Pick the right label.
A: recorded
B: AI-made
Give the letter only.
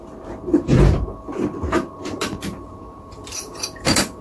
B